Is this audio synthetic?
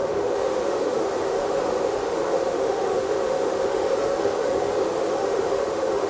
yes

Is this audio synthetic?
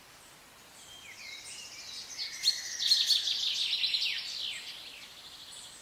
no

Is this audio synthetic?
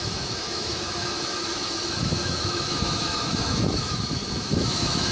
yes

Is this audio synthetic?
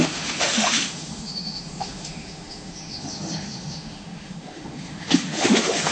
yes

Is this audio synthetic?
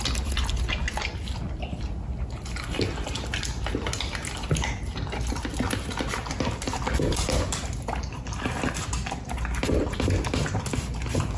no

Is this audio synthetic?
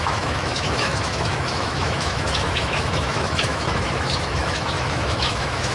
yes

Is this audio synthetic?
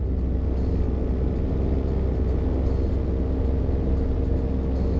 no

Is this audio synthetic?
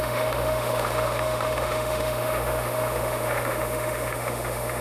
yes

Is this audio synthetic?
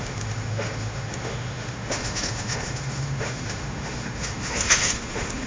yes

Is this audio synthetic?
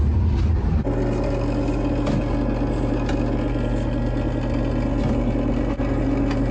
no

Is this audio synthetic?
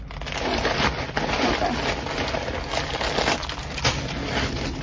no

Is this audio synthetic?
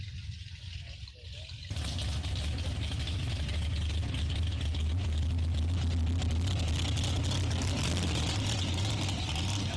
no